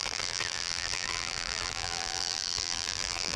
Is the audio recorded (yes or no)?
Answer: no